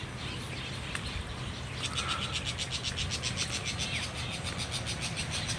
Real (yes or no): yes